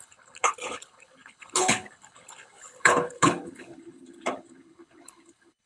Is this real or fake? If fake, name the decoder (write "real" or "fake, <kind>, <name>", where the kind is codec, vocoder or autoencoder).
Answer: fake, codec, HILCodec